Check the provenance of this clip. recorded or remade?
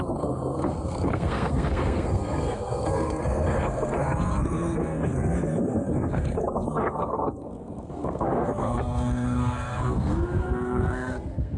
remade